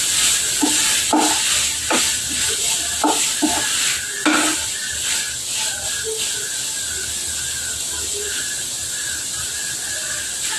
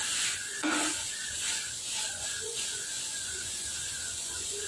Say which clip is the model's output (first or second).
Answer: second